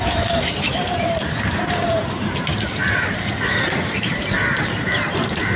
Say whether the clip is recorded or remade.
remade